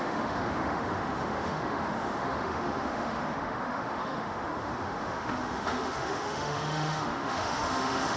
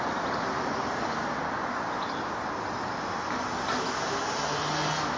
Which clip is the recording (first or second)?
second